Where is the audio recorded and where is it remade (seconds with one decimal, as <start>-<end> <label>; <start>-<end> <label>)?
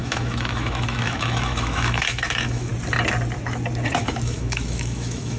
0.0-2.7 remade; 2.7-4.0 recorded; 4.0-5.4 remade